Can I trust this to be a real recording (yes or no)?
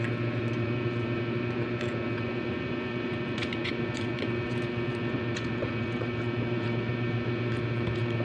no